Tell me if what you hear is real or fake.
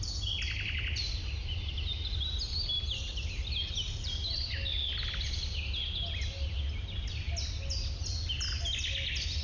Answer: real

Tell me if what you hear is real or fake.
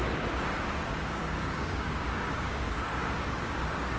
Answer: fake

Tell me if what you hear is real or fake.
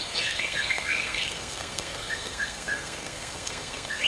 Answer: fake